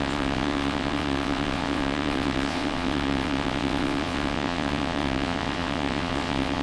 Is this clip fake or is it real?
fake